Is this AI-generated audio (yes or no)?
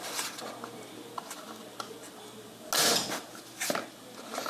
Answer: no